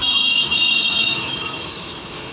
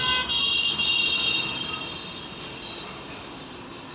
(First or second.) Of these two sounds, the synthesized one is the first